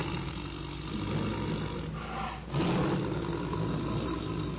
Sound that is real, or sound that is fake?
real